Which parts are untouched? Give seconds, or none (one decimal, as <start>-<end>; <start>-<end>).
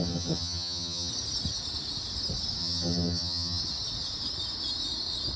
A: 1.1-2.6; 3.6-5.4